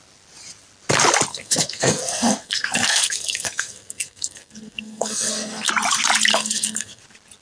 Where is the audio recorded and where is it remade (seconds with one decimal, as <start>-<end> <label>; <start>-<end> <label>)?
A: 0.0-1.3 recorded; 1.3-5.7 remade; 5.7-6.3 recorded; 6.3-7.0 remade; 7.0-7.4 recorded